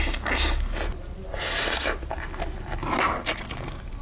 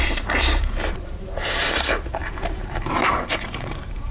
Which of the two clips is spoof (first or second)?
second